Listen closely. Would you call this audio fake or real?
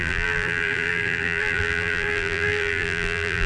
fake